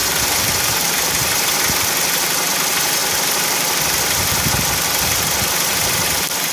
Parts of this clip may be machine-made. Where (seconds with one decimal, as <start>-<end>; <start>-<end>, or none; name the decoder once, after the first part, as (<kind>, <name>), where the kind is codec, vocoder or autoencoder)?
0.0-2.5 (vocoder, BigVGAN v2); 3.0-5.2